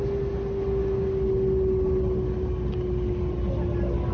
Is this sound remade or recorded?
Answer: recorded